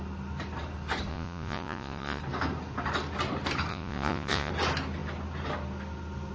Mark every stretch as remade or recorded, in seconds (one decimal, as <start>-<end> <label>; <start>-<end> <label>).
0.0-1.1 recorded; 1.1-2.2 remade; 2.2-3.7 recorded; 3.7-4.5 remade; 4.5-6.3 recorded

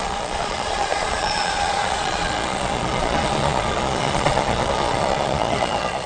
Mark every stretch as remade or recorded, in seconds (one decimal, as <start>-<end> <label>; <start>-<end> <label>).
0.0-6.1 remade

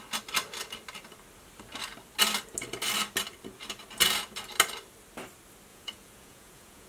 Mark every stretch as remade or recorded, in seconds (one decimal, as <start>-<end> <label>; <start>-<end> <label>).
0.0-5.7 recorded; 5.7-6.9 remade

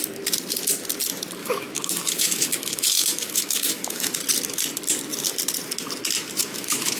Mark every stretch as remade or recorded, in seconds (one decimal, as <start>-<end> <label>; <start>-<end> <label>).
0.0-1.4 recorded; 1.4-4.2 remade; 4.2-6.4 recorded; 6.4-7.0 remade

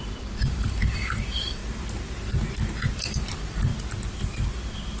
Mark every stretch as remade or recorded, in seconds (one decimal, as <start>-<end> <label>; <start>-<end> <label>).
0.0-1.6 remade; 1.6-3.0 recorded; 3.0-3.7 remade; 3.7-5.0 recorded